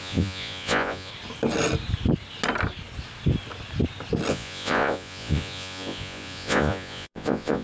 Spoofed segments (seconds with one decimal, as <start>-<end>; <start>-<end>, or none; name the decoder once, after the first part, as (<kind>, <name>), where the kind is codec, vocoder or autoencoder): 0.0-1.1 (vocoder, Vocos); 4.3-7.6